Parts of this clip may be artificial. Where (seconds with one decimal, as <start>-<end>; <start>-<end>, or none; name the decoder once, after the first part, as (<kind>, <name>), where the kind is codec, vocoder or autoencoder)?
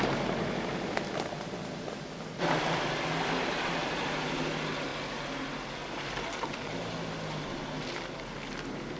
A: none